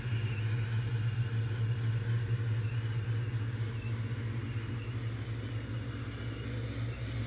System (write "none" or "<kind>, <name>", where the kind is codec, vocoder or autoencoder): none